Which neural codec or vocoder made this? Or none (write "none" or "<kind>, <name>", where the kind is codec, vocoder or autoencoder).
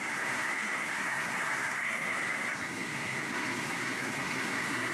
codec, SNAC